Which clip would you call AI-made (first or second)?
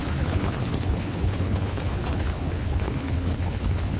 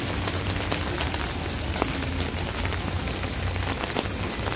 first